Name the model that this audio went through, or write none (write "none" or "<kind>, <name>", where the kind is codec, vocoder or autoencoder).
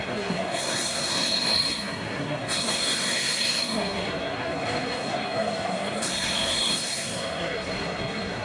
codec, SNAC